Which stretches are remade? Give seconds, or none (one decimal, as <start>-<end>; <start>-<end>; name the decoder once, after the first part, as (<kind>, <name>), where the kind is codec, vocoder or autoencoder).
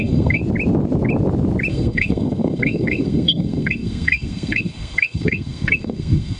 0.0-0.4 (codec, SNAC); 1.7-6.4